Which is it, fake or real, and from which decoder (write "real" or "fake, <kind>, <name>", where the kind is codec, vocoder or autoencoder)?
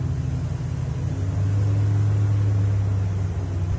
real